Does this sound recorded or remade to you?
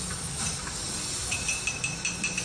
recorded